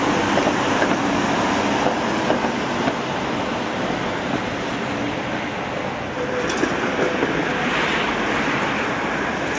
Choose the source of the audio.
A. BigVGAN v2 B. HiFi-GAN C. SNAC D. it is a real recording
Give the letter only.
D